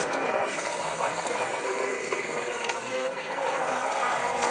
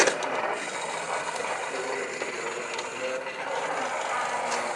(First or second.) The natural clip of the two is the second